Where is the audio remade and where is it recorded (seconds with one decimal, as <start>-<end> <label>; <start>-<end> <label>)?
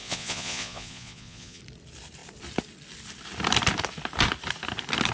0.0-1.6 remade; 1.6-5.1 recorded